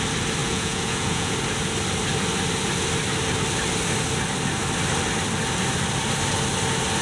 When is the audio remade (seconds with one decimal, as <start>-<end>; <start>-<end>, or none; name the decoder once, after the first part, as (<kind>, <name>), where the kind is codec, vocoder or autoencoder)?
0.4-1.3 (vocoder, Vocos)